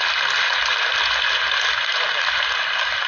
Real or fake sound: real